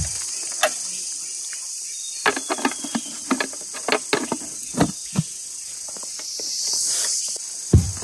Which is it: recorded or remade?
recorded